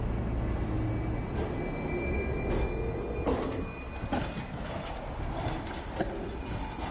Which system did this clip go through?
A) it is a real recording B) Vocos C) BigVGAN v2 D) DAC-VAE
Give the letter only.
A